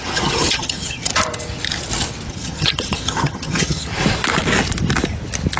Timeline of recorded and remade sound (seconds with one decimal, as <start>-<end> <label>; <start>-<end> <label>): 0.0-1.1 remade; 1.1-2.3 recorded; 2.3-3.9 remade; 3.9-5.6 recorded